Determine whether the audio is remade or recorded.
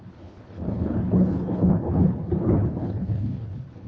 remade